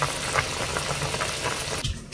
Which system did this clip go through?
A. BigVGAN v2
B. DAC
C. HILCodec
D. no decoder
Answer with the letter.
D